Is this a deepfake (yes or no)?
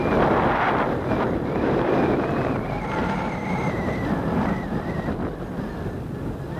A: no